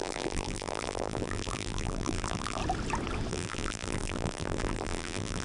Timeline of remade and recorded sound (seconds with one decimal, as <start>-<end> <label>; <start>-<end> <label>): 0.0-2.6 remade; 2.6-3.3 recorded; 3.3-5.4 remade